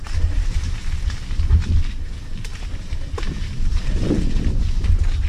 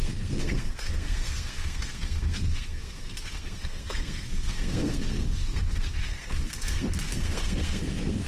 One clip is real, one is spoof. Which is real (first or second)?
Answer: first